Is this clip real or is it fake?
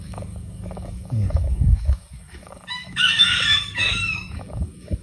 fake